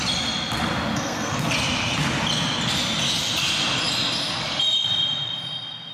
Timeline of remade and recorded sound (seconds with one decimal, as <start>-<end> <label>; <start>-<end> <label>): 0.0-0.9 recorded; 0.9-1.5 remade; 1.5-5.9 recorded